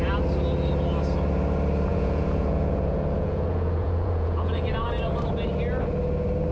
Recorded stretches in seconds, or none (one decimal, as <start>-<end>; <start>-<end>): 0.0-1.9; 4.9-6.5